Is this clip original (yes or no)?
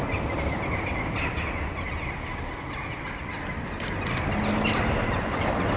yes